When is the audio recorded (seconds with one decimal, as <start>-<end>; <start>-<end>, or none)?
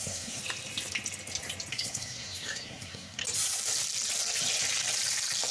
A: 0.4-1.7; 3.2-5.5